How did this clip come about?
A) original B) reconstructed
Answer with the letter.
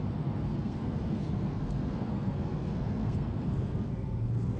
B